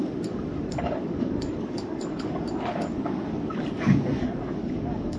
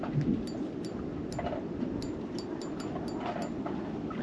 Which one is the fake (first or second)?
first